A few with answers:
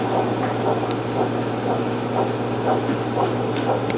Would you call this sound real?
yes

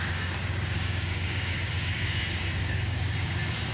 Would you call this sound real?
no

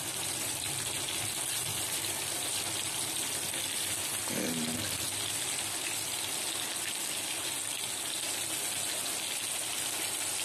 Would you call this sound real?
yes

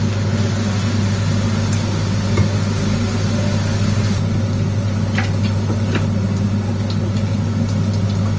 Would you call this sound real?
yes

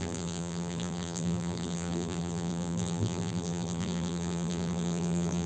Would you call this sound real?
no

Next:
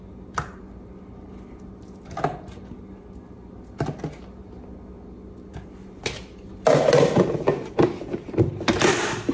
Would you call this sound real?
yes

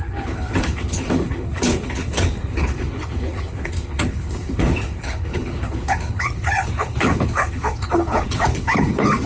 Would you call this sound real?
no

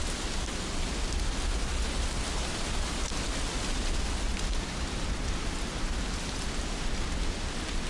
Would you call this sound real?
yes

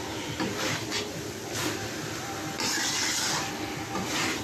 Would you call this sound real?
no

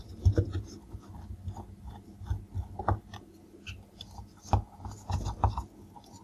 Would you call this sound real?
yes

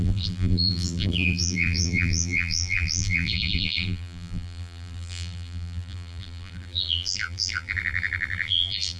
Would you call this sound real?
no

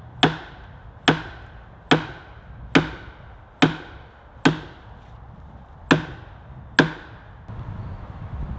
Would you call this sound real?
yes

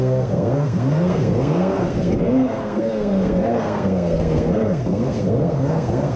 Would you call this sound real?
no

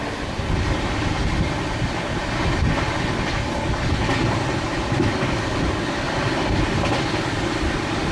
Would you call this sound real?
yes